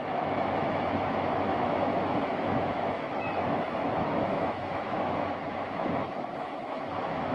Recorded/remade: remade